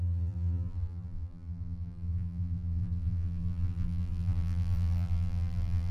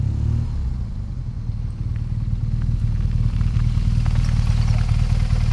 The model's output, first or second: first